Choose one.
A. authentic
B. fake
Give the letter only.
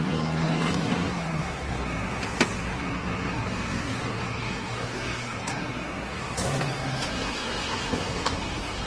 B